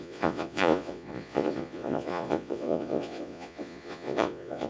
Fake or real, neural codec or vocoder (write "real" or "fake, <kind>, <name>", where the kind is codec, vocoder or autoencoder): fake, vocoder, Vocos